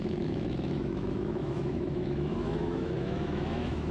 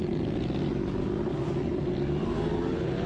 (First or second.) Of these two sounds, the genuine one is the second